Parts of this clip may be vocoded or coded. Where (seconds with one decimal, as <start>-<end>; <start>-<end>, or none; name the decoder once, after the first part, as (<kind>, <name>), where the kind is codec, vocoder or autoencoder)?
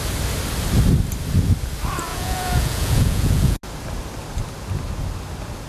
2.1-3.6 (vocoder, Vocos)